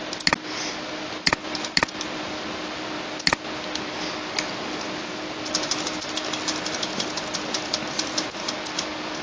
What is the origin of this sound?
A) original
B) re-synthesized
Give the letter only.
A